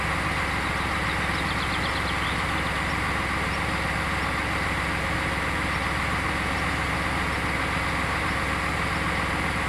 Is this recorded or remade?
recorded